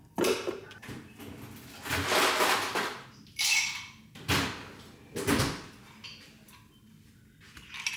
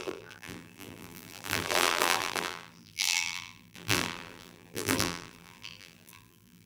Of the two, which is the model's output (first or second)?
second